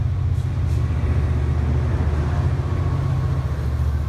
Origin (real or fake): real